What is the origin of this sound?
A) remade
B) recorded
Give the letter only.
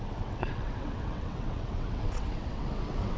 A